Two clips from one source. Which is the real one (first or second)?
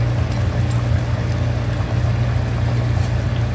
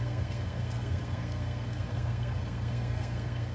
first